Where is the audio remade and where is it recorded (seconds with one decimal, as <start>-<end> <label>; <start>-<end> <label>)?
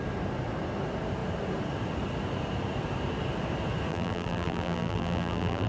0.0-3.9 recorded; 3.9-5.7 remade